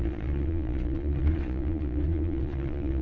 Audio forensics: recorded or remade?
remade